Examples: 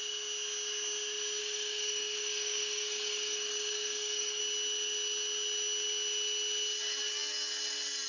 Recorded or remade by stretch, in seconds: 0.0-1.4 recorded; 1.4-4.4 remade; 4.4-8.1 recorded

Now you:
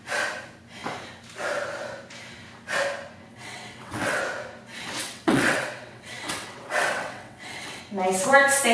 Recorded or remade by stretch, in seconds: 0.0-3.3 recorded; 3.3-4.2 remade; 4.2-5.0 recorded; 5.0-7.8 remade; 7.8-8.7 recorded

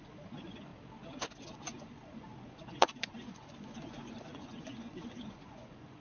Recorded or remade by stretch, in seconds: 0.0-0.7 remade; 0.7-1.5 recorded; 1.5-6.0 remade